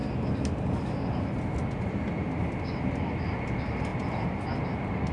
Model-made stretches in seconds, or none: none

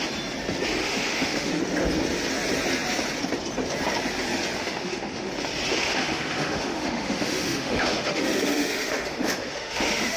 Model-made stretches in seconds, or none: 0.8-1.6 (autoencoder, DAC-VAE); 4.6-5.3; 5.7-10.2

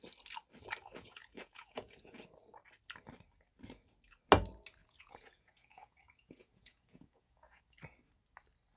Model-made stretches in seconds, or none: 0.8-2.2 (vocoder, Vocos); 4.8-7.6

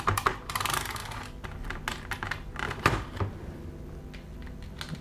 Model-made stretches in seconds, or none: none

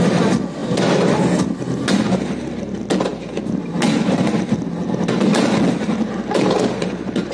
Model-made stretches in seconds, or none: none

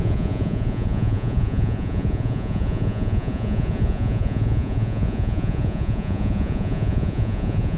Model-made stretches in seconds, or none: 0.0-7.8 (vocoder, Vocos)